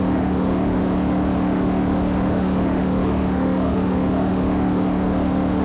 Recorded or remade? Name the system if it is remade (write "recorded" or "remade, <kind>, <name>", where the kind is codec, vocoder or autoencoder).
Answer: remade, autoencoder, DAC-VAE